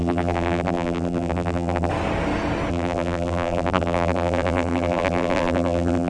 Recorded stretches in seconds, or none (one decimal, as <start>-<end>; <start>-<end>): 1.9-2.7